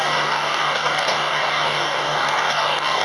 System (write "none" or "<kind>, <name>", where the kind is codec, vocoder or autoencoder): codec, DAC